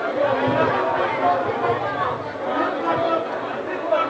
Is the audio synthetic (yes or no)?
no